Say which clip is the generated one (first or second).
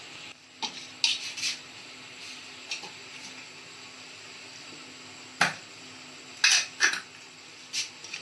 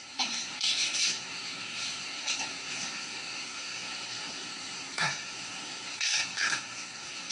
second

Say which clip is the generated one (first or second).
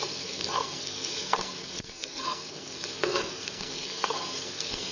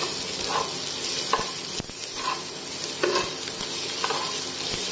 first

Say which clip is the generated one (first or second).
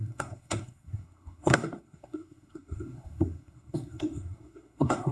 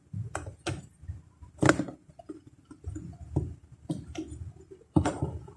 first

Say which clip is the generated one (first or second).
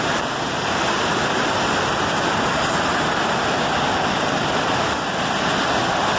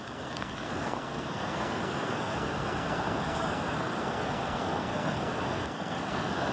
second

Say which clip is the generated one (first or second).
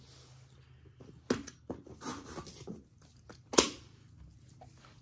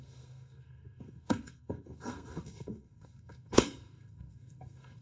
second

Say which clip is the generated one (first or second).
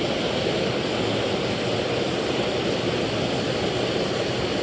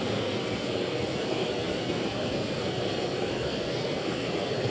second